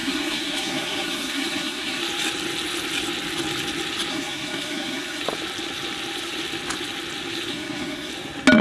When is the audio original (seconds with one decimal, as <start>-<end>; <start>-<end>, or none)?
2.0-4.1; 5.2-7.5; 8.1-8.6